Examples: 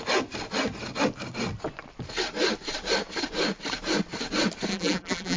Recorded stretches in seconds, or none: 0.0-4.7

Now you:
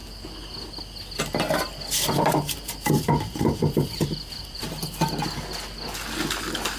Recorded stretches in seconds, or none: 0.0-2.3; 4.8-6.8

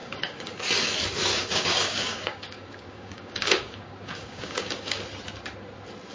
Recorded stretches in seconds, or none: 0.5-1.3; 5.0-6.1